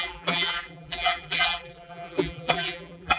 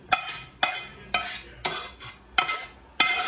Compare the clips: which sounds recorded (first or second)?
second